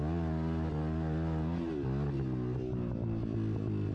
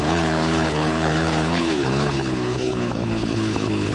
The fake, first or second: second